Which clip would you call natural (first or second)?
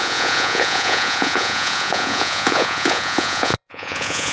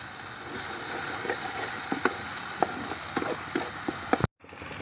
second